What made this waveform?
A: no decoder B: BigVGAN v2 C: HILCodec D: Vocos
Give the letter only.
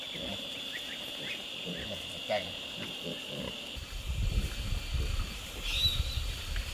B